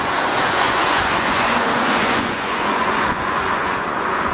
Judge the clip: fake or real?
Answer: fake